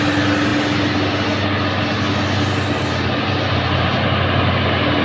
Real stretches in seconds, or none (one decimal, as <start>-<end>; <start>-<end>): 0.0-5.0